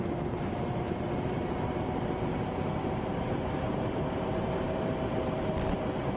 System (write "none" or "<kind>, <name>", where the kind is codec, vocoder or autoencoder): vocoder, BigVGAN v2